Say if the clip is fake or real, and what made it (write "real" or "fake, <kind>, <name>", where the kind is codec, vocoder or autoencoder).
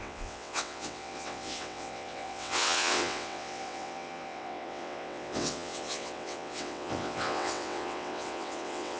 fake, vocoder, WaveNeXt